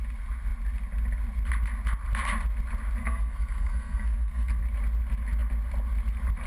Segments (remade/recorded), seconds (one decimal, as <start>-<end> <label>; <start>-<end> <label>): 0.0-3.0 recorded; 3.0-4.6 remade; 4.6-6.5 recorded